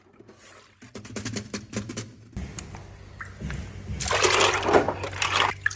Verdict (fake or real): real